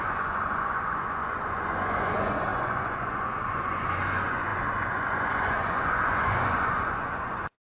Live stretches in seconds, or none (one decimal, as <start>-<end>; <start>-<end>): none